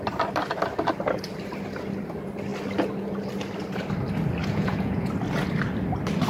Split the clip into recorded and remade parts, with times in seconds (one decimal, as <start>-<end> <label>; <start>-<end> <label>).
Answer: 0.0-4.4 recorded; 4.4-5.1 remade; 5.1-6.3 recorded